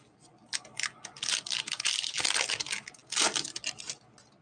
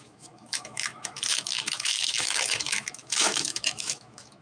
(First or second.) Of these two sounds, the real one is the first